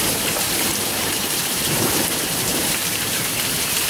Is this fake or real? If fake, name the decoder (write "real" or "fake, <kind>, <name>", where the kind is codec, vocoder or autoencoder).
fake, vocoder, BigVGAN v2